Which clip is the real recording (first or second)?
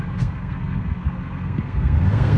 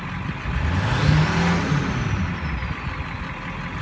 second